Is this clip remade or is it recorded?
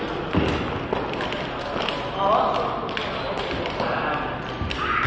recorded